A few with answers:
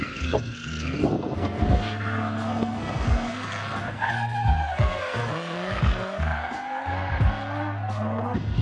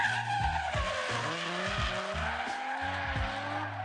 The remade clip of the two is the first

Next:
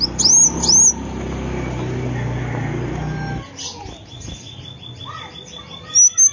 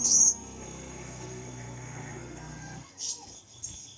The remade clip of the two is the second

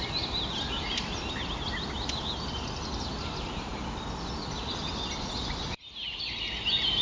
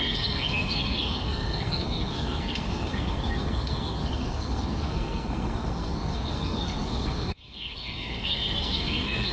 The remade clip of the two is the second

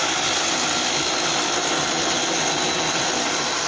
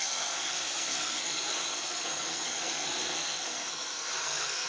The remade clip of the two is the second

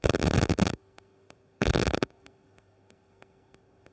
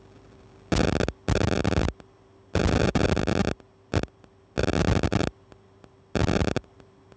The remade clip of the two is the first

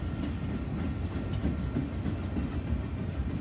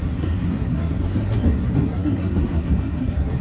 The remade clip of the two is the second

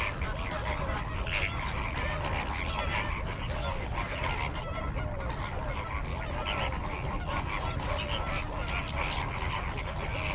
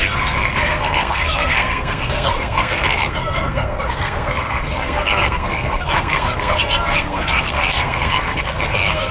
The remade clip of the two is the second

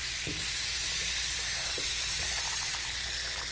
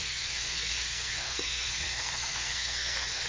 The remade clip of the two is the second